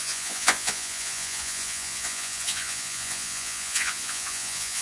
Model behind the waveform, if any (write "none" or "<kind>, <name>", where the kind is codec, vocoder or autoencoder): vocoder, Vocos